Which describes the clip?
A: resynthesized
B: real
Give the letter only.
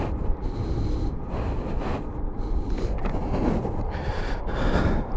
B